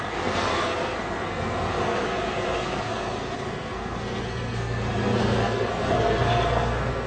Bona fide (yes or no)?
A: no